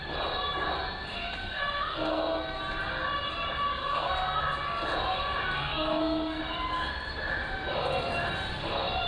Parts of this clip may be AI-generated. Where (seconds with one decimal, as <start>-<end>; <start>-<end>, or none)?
1.4-2.6; 3.8-4.4; 5.6-6.4